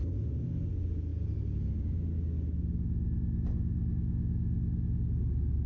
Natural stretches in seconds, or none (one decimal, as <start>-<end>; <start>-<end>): 0.0-5.7